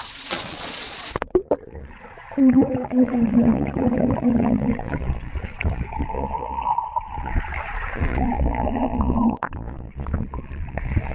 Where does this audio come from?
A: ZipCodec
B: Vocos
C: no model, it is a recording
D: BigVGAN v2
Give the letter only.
B